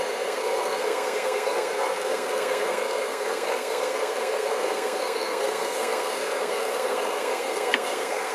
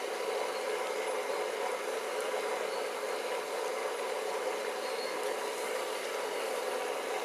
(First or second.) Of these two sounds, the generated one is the first